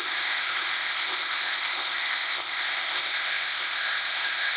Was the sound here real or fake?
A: fake